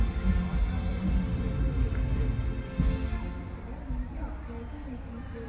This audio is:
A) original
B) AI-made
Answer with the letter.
A